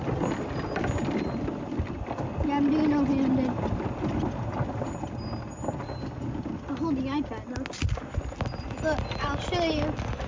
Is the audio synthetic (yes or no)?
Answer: no